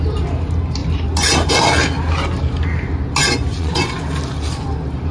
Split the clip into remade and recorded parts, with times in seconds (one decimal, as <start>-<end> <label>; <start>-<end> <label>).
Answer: 0.0-3.5 recorded; 3.5-4.0 remade; 4.0-5.1 recorded